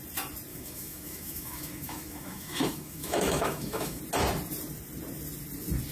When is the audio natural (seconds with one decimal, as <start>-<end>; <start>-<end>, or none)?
0.0-0.5; 4.0-5.9